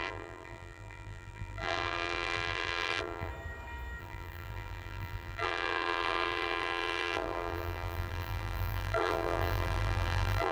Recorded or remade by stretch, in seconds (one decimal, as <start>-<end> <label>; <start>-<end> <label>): 0.0-3.3 remade; 3.3-4.0 recorded; 4.0-10.5 remade